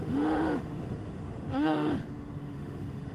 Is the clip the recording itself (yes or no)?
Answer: no